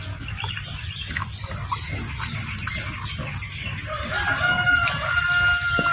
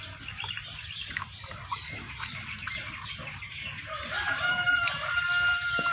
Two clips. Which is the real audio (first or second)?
first